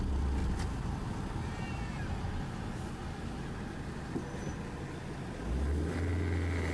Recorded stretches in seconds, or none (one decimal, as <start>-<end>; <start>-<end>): 0.0-6.7